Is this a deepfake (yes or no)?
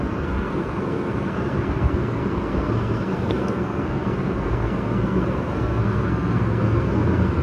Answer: yes